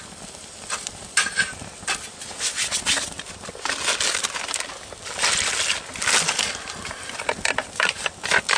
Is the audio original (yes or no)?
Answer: yes